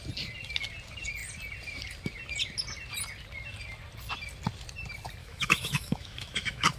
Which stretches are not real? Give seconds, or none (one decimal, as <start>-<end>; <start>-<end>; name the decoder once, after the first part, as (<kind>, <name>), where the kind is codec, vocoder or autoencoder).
5.2-6.8 (autoencoder, DAC-VAE)